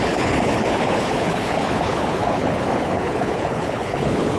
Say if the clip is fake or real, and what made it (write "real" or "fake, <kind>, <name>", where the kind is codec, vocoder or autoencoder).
fake, codec, HILCodec